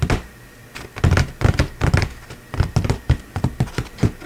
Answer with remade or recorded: recorded